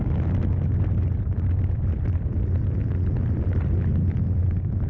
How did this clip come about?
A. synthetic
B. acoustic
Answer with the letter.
B